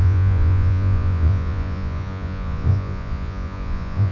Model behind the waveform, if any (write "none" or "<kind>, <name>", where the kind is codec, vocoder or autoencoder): vocoder, Vocos